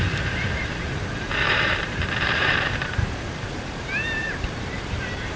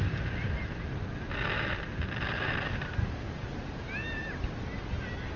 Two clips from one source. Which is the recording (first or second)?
second